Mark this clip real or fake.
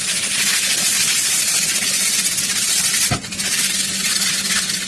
real